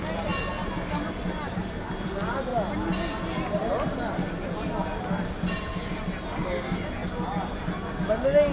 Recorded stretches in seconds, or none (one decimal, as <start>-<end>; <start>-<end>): 0.0-8.5